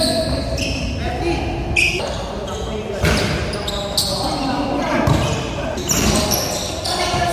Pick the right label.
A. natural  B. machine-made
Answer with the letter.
A